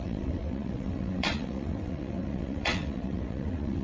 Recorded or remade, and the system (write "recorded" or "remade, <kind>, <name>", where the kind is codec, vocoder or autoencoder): remade, vocoder, WaveNeXt